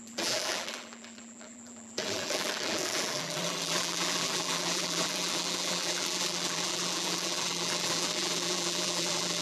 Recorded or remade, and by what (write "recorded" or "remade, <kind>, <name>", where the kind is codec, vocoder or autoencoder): remade, vocoder, BigVGAN v2